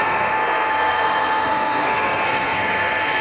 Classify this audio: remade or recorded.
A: remade